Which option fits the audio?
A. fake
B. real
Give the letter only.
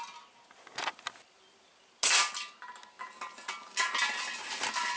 B